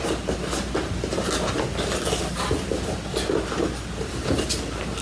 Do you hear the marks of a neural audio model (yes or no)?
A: no